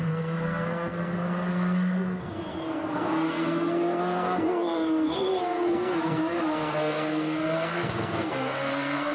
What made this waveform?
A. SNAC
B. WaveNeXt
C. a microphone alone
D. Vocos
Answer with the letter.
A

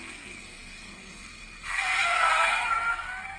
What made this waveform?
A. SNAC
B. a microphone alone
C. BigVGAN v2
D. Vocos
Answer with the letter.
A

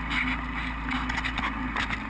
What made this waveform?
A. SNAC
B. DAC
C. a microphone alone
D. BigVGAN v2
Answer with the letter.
C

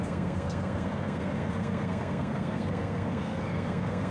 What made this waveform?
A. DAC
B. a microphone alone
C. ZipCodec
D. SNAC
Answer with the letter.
D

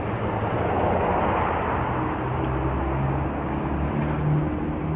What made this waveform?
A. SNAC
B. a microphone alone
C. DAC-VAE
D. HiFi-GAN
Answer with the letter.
B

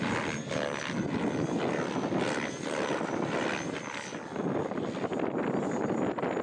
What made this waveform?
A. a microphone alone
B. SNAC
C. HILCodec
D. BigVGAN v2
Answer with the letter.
A